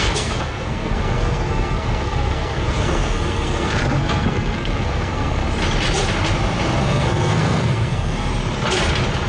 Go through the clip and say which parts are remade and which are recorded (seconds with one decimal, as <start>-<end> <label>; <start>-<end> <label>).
0.0-5.4 remade; 5.4-6.8 recorded; 6.8-8.3 remade; 8.3-9.3 recorded